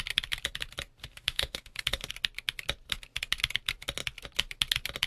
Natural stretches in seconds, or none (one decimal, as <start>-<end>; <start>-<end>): 0.0-1.0; 2.1-5.1